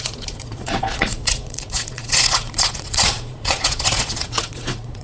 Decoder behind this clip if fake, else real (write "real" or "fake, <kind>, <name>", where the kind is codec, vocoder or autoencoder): fake, vocoder, Vocos